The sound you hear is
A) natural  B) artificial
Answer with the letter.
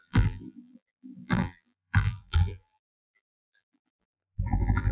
B